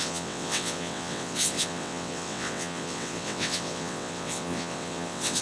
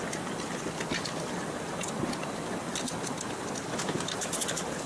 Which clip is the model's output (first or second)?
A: first